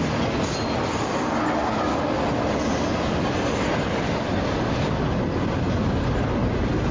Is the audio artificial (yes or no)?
no